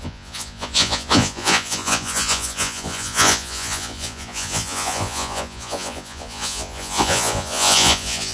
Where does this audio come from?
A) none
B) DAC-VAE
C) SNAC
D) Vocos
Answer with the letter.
D